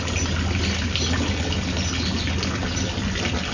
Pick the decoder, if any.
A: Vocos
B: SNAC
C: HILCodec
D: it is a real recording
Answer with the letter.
D